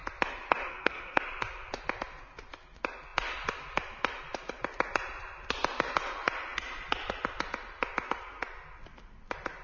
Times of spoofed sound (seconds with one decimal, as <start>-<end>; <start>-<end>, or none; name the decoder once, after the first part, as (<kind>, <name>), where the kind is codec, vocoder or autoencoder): 0.7-1.2 (codec, SNAC)